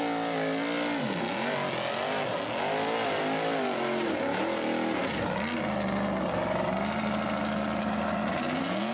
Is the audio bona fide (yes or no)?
yes